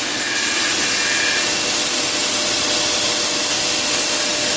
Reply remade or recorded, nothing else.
recorded